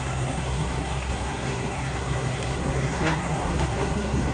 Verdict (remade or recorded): remade